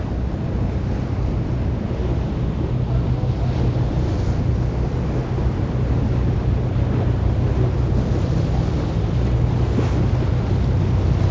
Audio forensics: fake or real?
real